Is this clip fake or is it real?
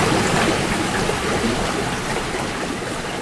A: real